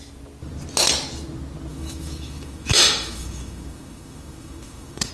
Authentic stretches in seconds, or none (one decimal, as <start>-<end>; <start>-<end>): 0.0-1.7

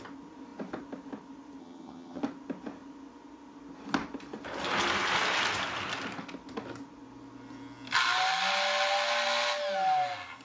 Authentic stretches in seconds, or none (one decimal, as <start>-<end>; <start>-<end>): 0.0-1.6; 2.2-10.4

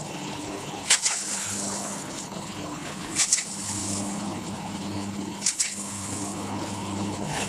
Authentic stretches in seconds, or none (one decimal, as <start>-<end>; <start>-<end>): none

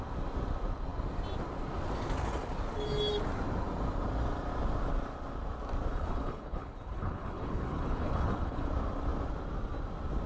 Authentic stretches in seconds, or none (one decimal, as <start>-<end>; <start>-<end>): 0.0-5.9; 8.7-10.3

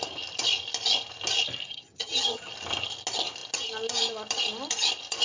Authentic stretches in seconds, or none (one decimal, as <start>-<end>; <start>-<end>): 0.0-1.6; 2.5-5.2

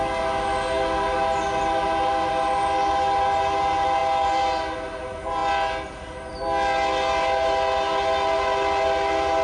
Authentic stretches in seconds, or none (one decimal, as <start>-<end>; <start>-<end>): 0.0-9.4